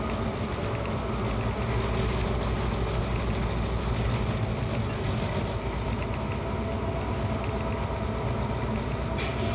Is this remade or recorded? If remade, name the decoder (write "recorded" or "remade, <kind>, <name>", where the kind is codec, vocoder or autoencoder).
recorded